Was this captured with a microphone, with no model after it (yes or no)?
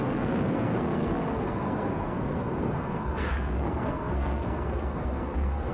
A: no